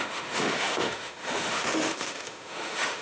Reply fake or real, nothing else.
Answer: fake